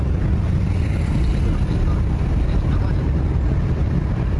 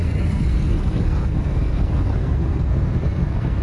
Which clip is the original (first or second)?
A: first